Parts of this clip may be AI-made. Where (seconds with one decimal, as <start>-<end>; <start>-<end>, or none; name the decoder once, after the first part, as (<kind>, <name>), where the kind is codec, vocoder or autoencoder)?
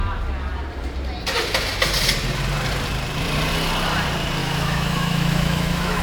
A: 4.4-6.0 (autoencoder, DAC-VAE)